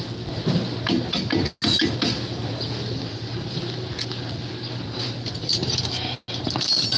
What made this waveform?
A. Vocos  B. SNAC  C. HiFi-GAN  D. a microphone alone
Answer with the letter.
D